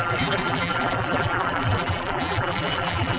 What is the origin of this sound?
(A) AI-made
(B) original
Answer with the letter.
A